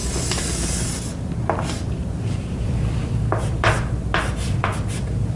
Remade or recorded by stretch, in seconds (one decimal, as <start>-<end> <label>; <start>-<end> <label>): 0.0-2.3 recorded; 2.3-5.4 remade

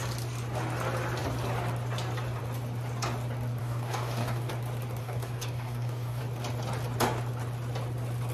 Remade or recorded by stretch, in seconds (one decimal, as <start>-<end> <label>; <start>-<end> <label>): 0.0-3.6 recorded; 3.6-4.5 remade; 4.5-5.0 recorded; 5.0-6.2 remade; 6.2-8.3 recorded